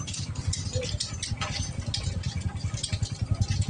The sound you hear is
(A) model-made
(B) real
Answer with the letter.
B